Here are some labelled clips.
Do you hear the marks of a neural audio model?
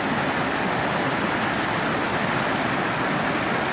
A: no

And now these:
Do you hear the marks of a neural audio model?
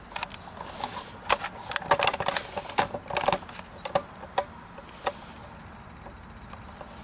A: no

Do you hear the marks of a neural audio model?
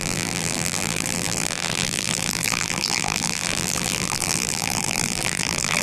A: yes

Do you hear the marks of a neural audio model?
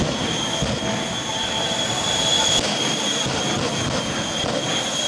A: no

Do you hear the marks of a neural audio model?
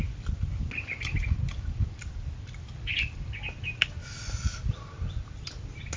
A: no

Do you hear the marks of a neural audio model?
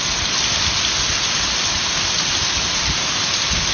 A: no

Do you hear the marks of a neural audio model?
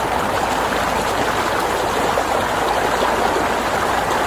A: no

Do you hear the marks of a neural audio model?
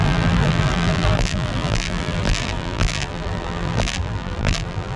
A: yes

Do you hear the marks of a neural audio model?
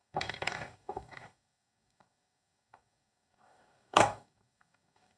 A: yes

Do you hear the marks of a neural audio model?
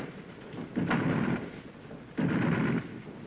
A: no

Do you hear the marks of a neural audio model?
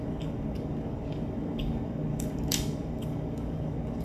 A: yes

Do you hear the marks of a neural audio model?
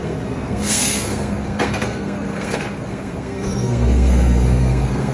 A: yes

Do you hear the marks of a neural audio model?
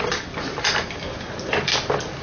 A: no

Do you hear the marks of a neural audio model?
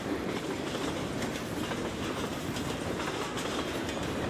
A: no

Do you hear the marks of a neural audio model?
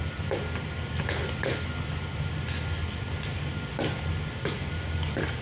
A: no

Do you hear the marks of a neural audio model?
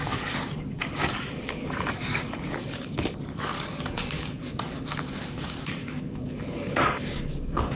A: yes